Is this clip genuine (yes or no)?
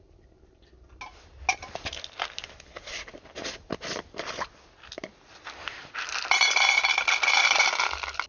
yes